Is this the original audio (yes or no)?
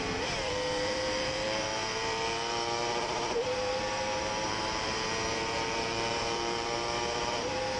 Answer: no